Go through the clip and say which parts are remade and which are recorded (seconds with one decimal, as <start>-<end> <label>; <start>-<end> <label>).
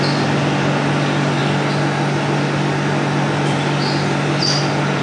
0.0-5.0 recorded